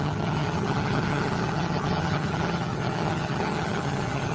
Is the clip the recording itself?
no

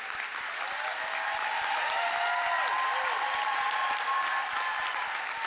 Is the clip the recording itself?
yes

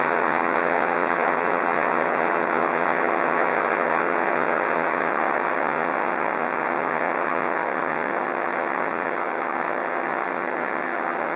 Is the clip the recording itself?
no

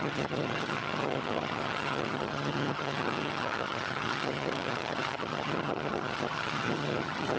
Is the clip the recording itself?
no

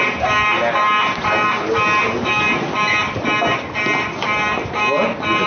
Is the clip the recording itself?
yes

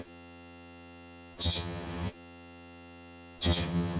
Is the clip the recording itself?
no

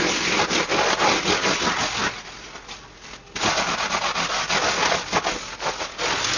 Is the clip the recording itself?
yes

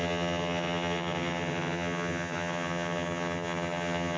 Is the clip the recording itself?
no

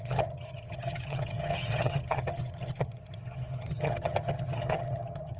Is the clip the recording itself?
no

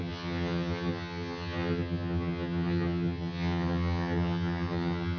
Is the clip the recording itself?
no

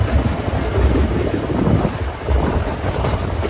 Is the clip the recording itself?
yes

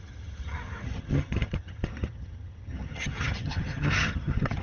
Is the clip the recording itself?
no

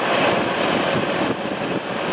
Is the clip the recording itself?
yes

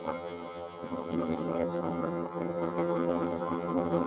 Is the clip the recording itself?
no